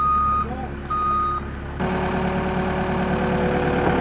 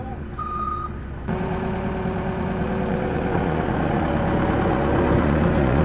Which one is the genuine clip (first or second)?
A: first